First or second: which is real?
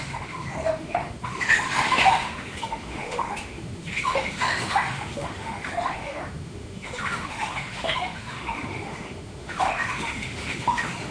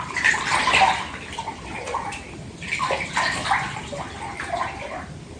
second